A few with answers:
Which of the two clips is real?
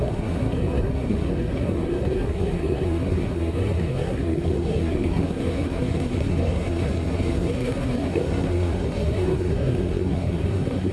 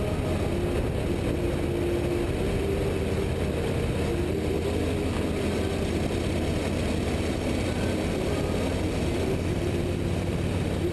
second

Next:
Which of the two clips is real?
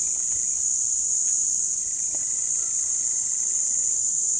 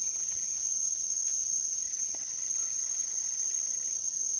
first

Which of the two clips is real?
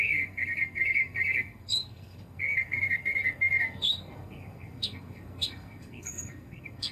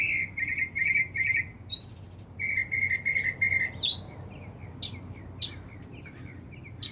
second